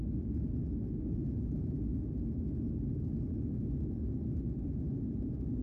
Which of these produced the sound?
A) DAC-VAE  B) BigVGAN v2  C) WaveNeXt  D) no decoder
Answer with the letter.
D